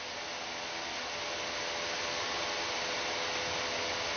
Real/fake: real